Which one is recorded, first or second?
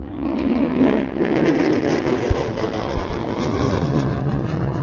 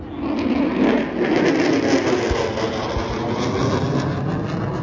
second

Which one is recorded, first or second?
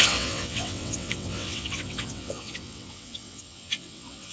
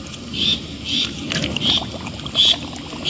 second